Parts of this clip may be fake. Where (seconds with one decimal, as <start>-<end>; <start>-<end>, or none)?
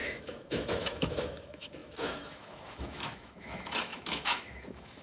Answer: 0.0-5.0